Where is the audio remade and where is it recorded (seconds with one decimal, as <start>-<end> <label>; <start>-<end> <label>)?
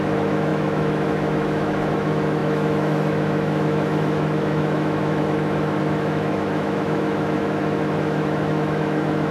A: 0.0-9.3 remade